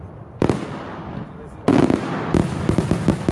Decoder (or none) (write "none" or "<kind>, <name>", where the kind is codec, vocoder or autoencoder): none